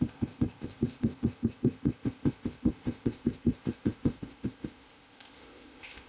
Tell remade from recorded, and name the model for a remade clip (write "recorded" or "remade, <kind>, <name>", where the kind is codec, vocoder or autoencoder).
remade, codec, ZipCodec